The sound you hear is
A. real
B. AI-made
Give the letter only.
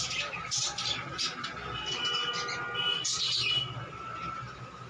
A